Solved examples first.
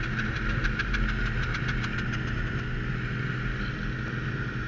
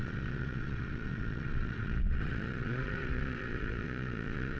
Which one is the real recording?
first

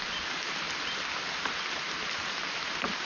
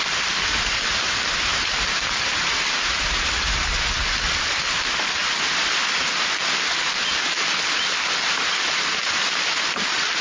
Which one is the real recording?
first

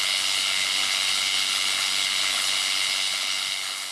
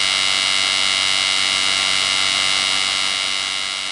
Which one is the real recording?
second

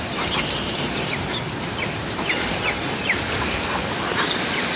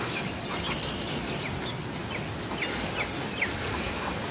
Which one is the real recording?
second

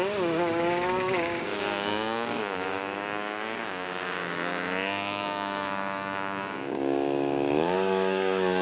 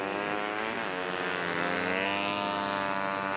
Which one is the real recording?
second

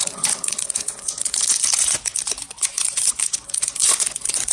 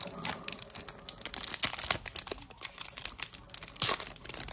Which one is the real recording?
second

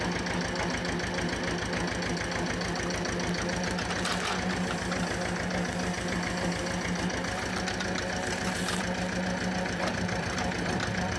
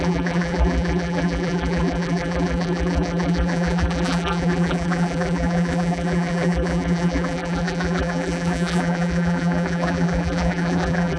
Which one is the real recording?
first